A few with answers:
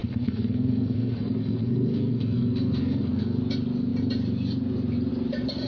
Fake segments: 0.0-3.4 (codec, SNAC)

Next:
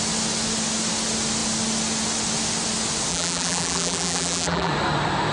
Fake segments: 3.1-4.7 (vocoder, BigVGAN v2)

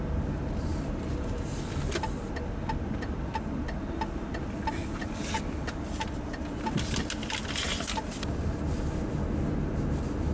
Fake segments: 0.7-1.6 (vocoder, BigVGAN v2)

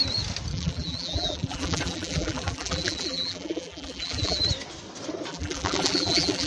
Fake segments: 0.5-4.4 (vocoder, BigVGAN v2); 5.3-6.5

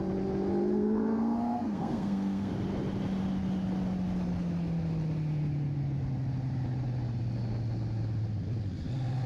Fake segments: 0.7-2.5 (codec, SNAC)

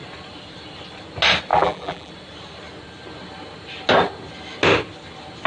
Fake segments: 1.5-2.1 (vocoder, BigVGAN v2)

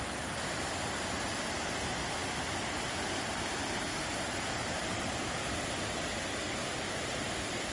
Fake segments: none